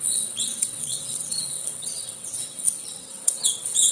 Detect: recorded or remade remade